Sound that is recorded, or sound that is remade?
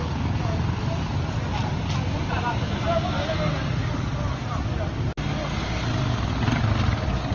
recorded